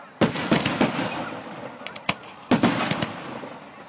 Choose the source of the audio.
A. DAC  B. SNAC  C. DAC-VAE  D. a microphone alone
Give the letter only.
D